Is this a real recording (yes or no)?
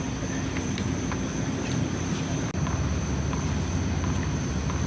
yes